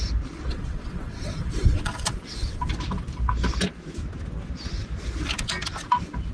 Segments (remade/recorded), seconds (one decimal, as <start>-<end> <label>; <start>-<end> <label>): 0.0-0.5 recorded; 0.5-2.7 remade; 2.7-6.3 recorded